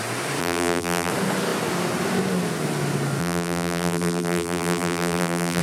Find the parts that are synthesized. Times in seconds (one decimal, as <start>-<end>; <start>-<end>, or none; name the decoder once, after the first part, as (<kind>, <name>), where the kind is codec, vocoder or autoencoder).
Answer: 0.4-1.1 (vocoder, BigVGAN v2); 3.2-5.6